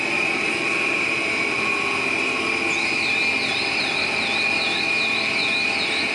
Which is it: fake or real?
real